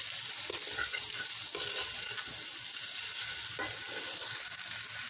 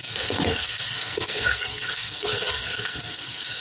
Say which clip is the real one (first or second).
first